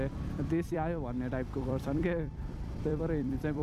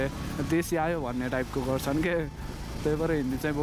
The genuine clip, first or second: second